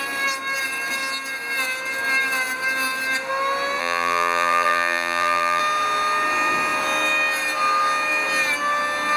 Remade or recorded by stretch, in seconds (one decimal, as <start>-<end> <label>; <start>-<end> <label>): 0.0-3.8 recorded; 3.8-5.6 remade; 5.6-9.2 recorded